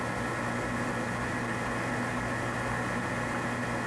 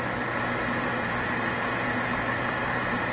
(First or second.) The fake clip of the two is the second